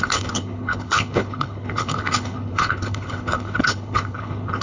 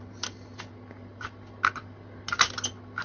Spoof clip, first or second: first